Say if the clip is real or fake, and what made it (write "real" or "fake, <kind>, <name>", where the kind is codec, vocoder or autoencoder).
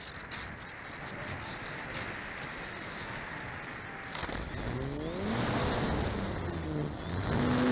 real